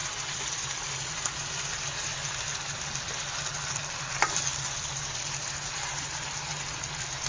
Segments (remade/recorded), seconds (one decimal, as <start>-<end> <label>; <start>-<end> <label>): 0.0-1.1 remade; 1.1-2.1 recorded; 2.1-5.4 remade; 5.4-7.3 recorded